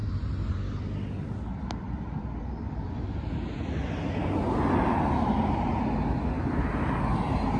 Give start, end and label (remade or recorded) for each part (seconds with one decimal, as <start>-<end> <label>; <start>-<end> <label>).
0.0-7.6 recorded